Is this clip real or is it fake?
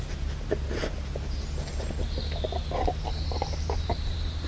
real